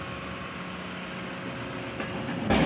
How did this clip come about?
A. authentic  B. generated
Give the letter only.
A